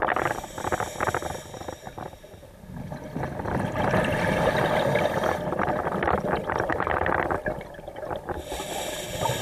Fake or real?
real